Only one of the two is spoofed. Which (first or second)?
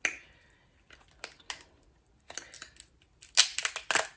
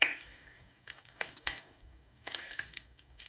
second